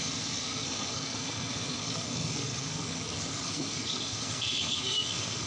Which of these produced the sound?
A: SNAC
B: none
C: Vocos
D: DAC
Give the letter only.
A